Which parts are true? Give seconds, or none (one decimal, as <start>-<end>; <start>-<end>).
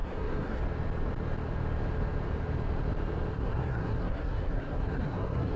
0.6-3.3